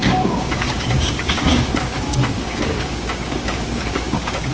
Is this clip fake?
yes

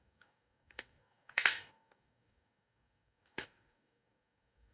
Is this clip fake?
yes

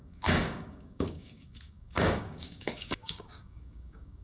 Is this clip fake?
yes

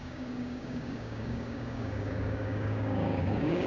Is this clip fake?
yes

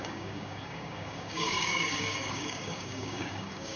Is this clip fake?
yes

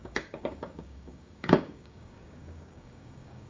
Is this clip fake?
yes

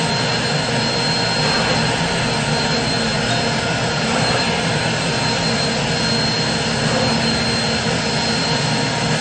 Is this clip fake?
no